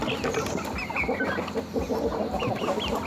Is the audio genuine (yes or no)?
yes